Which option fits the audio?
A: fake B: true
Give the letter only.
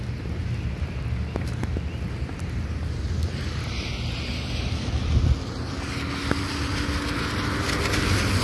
B